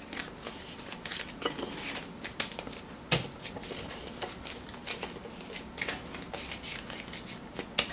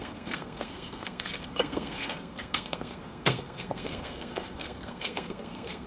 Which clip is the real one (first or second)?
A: first